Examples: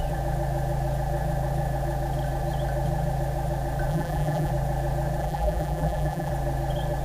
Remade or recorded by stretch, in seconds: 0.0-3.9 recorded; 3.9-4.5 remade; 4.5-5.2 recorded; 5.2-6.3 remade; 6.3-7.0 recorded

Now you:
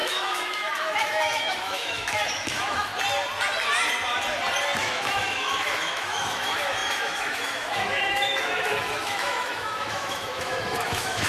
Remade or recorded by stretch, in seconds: 0.0-2.9 remade; 2.9-4.8 recorded; 4.8-11.3 remade

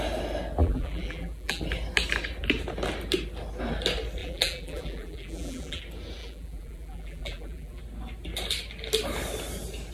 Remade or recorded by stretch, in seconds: 0.0-0.6 recorded; 0.6-1.6 remade; 1.6-4.2 recorded; 4.2-5.8 remade; 5.8-6.2 recorded; 6.2-7.8 remade; 7.8-9.9 recorded